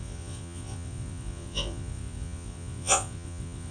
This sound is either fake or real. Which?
fake